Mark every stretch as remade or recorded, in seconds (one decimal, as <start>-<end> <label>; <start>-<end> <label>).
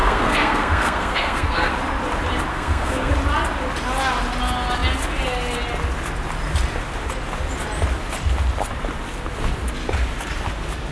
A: 0.0-1.7 remade; 1.7-2.5 recorded; 2.5-3.1 remade; 3.1-10.9 recorded